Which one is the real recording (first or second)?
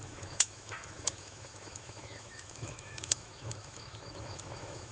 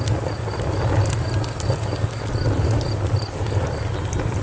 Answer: second